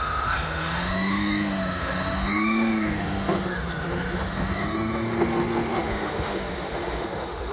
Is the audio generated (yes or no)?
yes